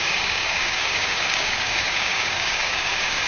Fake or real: fake